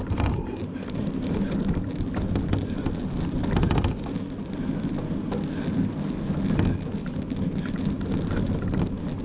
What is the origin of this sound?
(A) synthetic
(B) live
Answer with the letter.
B